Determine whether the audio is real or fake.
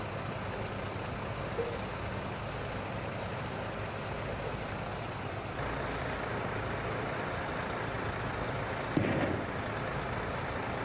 real